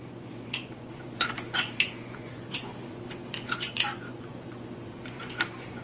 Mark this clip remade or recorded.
remade